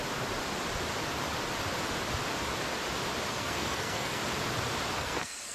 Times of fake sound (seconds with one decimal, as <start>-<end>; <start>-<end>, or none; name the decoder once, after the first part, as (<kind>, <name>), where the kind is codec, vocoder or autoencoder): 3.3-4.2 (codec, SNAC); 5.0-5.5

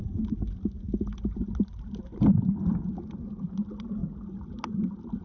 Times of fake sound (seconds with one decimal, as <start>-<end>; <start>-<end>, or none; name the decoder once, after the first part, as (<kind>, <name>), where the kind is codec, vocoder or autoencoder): none

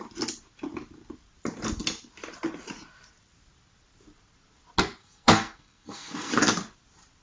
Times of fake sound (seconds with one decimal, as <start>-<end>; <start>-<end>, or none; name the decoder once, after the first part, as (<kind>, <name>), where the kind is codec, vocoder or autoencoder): 5.0-6.3 (codec, SNAC)

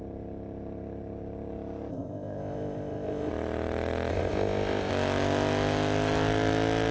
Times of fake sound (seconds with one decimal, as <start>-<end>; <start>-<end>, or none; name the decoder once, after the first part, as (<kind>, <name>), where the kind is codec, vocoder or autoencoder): 1.9-3.3 (codec, ZipCodec); 4.1-4.9

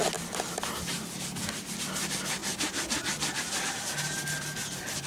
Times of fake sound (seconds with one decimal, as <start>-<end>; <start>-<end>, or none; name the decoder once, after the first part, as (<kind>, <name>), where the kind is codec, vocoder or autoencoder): none

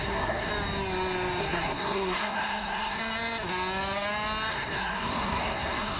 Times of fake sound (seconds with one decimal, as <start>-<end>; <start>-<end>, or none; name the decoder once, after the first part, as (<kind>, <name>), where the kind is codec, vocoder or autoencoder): 0.0-0.5 (codec, SNAC); 1.4-3.0; 4.5-6.0